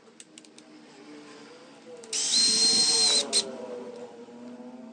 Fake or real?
real